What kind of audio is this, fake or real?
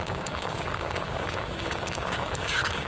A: fake